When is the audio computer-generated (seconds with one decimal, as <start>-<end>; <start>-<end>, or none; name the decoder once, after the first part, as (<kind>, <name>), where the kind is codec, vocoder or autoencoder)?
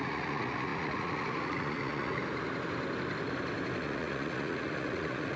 0.0-2.2 (vocoder, Vocos); 3.8-5.4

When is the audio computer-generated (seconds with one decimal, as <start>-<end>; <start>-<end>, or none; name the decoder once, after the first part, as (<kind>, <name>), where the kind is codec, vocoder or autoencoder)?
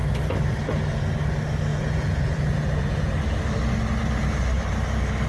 1.7-3.1 (vocoder, Vocos)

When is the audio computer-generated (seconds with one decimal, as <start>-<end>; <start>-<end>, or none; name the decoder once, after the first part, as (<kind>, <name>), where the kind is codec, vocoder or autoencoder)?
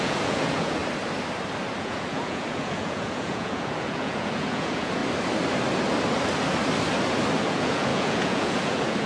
0.0-0.8 (vocoder, Vocos); 1.8-5.0; 7.4-9.1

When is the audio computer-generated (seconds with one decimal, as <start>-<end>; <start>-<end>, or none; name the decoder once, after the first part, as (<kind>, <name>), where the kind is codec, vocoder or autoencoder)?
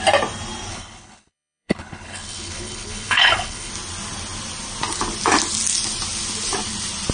0.7-3.7 (codec, HILCodec)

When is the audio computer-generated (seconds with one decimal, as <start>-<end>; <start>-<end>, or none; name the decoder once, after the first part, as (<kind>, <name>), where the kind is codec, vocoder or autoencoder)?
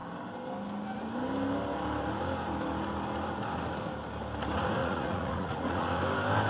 4.8-6.0 (vocoder, Vocos)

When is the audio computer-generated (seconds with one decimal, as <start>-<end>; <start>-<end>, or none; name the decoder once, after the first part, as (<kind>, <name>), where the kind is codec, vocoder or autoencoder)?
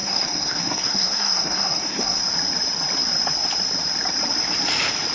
0.0-2.2 (codec, SNAC)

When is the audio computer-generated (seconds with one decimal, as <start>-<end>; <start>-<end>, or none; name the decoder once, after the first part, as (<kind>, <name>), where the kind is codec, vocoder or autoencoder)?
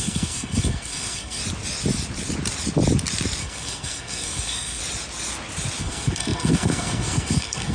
0.0-1.4 (codec, SNAC); 3.4-4.8; 5.8-7.7